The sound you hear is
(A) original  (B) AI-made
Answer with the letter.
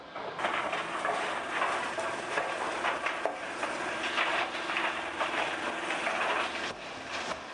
A